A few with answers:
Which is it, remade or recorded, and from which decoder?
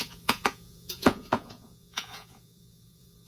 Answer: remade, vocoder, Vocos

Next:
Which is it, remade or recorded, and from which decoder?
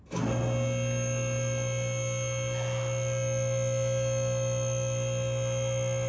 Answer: recorded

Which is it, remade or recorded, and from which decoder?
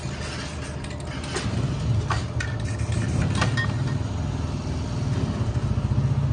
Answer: recorded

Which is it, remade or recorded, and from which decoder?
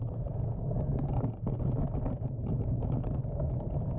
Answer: recorded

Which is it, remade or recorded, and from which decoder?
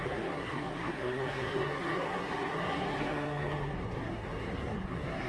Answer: remade, codec, SNAC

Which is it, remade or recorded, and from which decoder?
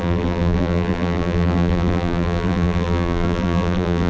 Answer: remade, vocoder, BigVGAN v2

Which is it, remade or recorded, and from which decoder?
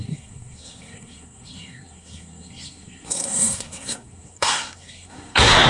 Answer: remade, codec, SNAC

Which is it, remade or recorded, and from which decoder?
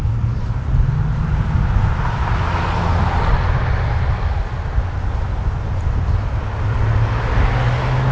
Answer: recorded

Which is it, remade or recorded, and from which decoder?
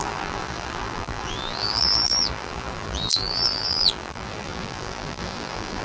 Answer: remade, vocoder, BigVGAN v2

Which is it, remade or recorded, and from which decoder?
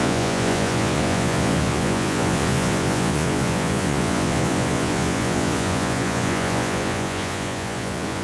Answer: remade, vocoder, Vocos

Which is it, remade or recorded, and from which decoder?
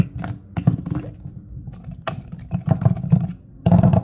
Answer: recorded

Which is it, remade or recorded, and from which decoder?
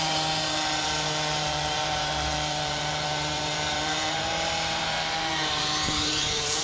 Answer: remade, vocoder, BigVGAN v2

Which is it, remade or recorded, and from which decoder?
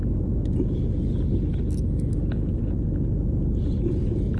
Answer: recorded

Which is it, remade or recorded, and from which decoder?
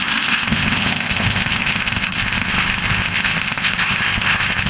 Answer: remade, codec, ZipCodec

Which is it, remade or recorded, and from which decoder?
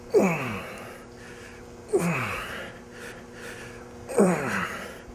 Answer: recorded